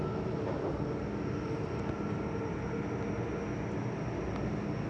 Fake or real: real